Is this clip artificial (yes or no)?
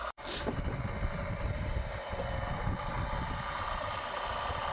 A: no